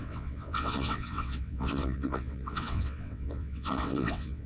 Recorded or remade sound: remade